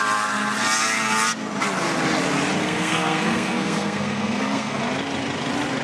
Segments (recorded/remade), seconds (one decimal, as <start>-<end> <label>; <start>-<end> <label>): 0.0-2.6 recorded; 2.6-4.8 remade; 4.8-5.8 recorded